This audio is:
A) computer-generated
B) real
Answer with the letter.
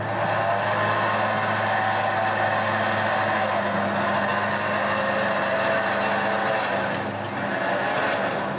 B